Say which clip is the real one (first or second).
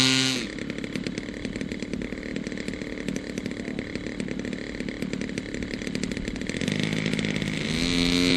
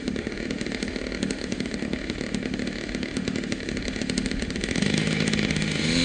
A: first